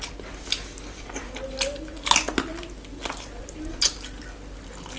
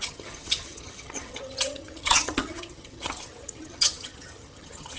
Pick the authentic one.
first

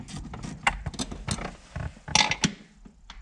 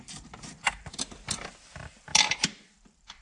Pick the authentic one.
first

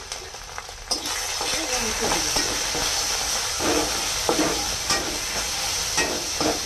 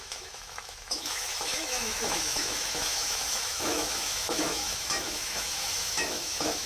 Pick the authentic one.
first